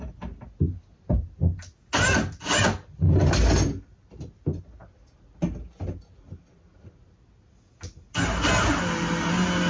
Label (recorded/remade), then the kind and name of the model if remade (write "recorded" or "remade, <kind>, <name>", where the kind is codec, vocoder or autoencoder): recorded